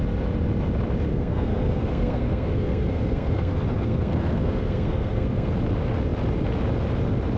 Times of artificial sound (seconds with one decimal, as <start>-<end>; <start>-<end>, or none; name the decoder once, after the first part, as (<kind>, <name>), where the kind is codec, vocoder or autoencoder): 1.1-5.5 (codec, SNAC)